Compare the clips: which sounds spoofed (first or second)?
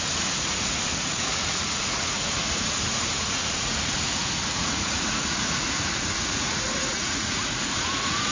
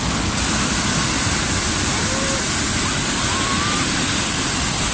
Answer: first